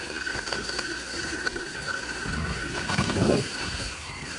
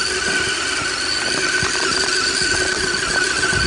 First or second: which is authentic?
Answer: second